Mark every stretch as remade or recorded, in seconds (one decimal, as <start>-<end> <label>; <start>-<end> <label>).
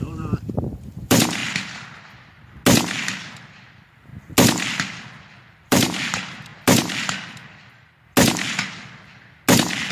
0.0-1.4 remade; 1.4-3.5 recorded; 3.5-4.1 remade; 4.1-5.4 recorded; 5.4-6.5 remade; 6.5-9.9 recorded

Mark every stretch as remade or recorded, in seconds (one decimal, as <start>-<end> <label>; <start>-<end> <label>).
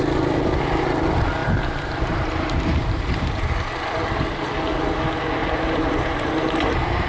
0.0-1.4 recorded; 1.4-3.5 remade; 3.5-5.4 recorded; 5.4-7.1 remade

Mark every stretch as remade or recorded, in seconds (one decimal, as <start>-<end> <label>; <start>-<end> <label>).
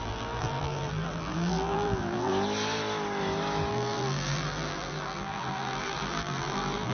0.0-2.3 remade; 2.3-3.7 recorded; 3.7-6.9 remade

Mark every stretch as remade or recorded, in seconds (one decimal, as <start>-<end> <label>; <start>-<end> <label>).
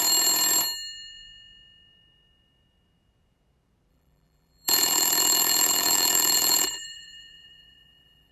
0.0-3.9 recorded; 3.9-8.3 remade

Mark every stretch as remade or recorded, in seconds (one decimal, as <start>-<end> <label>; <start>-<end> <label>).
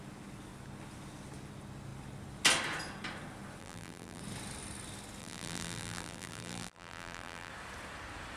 0.0-3.6 recorded; 3.6-4.2 remade; 4.2-5.2 recorded; 5.2-7.5 remade; 7.5-8.4 recorded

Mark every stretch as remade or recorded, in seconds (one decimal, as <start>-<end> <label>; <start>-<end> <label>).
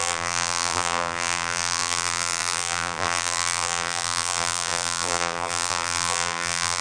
0.0-6.8 remade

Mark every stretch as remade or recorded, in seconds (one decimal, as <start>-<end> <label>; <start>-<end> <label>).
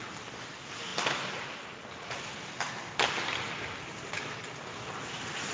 0.0-5.5 recorded